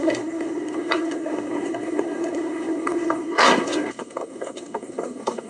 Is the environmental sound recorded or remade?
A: remade